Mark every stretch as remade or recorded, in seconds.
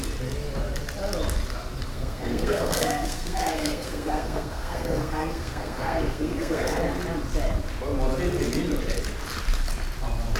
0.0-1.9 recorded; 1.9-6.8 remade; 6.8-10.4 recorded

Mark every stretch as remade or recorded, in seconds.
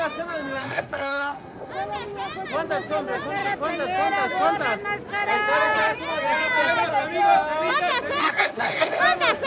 0.0-0.6 recorded; 0.6-1.7 remade; 1.7-8.2 recorded; 8.2-9.0 remade; 9.0-9.5 recorded